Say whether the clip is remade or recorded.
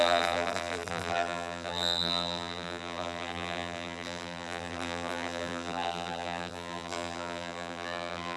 remade